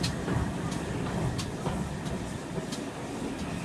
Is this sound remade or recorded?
recorded